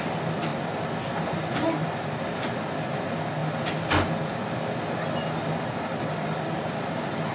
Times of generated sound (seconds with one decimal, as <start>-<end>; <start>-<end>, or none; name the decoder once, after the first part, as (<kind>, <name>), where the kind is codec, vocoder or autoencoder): none